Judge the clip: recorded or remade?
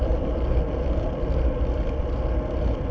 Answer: recorded